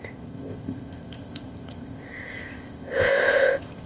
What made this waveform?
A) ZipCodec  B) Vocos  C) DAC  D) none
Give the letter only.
A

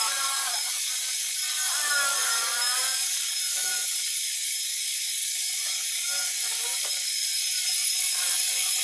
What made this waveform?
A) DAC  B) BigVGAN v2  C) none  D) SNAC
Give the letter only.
A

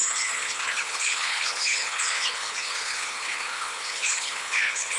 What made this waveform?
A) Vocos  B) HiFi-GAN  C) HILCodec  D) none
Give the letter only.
C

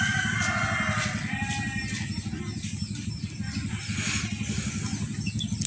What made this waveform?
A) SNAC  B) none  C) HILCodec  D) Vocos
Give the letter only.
B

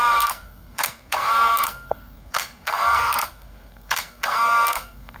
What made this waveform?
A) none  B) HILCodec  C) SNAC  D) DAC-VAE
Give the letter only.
C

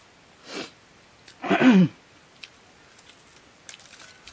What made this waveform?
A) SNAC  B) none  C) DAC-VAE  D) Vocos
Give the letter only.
B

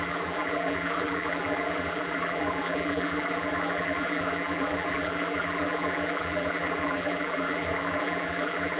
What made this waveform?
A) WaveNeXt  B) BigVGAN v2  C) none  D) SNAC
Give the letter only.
B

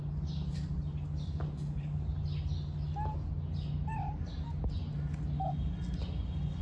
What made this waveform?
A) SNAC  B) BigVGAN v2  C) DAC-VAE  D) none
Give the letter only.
D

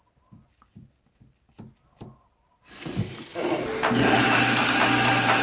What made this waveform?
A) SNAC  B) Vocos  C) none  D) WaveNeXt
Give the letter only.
C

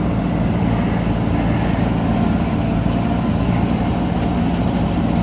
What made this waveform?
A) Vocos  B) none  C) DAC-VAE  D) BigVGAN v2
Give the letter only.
B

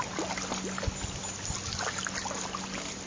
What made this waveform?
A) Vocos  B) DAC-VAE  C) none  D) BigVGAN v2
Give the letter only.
C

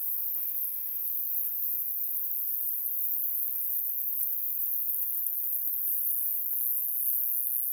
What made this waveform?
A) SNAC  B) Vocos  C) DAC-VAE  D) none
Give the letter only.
A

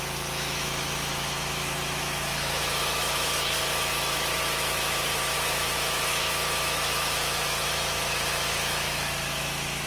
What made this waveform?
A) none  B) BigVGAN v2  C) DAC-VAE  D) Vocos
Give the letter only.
C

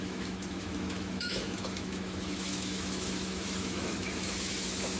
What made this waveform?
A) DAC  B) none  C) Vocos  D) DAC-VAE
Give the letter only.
D